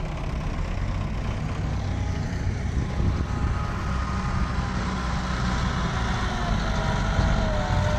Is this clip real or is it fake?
real